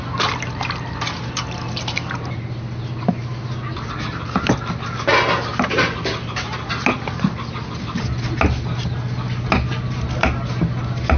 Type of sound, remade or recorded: recorded